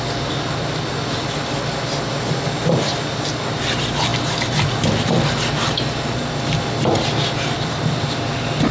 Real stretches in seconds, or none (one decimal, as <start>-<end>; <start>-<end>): 0.0-8.7